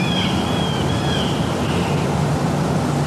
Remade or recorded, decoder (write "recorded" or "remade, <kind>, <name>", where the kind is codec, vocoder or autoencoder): remade, vocoder, BigVGAN v2